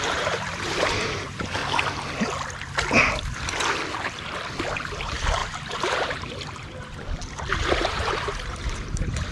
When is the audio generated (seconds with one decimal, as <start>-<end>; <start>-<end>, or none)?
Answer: 0.0-1.6; 5.0-9.3